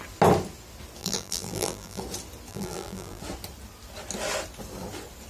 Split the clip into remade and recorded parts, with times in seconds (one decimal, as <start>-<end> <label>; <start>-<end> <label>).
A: 0.0-1.0 recorded; 1.0-2.0 remade; 2.0-2.5 recorded; 2.5-3.2 remade; 3.2-5.3 recorded